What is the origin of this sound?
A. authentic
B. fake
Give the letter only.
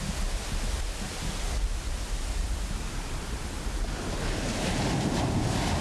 A